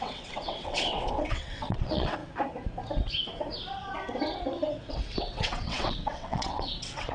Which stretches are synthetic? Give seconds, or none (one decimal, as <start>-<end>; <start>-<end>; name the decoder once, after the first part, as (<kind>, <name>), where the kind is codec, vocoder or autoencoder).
0.0-2.2 (vocoder, WaveNeXt); 5.2-7.1